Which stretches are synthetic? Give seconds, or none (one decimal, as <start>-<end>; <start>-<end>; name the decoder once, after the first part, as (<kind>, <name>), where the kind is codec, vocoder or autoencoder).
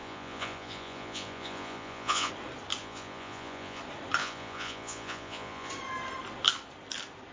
0.0-2.3 (vocoder, Vocos); 2.8-3.8; 4.2-5.7